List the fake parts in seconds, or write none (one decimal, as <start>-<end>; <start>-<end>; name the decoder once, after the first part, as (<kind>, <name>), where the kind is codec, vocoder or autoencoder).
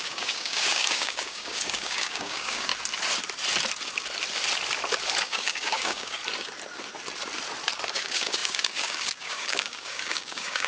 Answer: 0.0-2.7 (codec, DAC); 5.2-6.2; 7.9-10.7